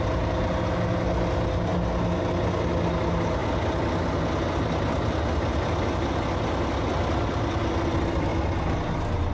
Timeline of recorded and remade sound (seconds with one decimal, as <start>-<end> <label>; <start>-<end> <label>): 0.0-9.3 recorded